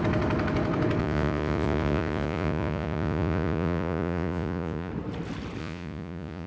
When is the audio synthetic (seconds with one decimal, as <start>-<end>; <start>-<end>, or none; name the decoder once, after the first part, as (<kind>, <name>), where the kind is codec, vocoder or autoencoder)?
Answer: 1.0-4.9 (vocoder, Vocos); 5.6-6.5